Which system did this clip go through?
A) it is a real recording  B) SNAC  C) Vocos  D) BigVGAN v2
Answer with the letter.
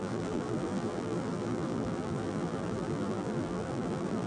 D